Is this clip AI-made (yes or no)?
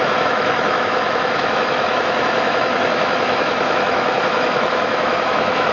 yes